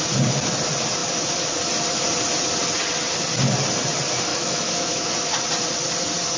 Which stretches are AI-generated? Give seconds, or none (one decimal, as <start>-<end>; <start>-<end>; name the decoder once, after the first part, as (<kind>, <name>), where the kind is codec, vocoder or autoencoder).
4.3-5.1 (autoencoder, DAC-VAE)